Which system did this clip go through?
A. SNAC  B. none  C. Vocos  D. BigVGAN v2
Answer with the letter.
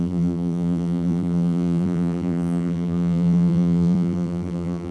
D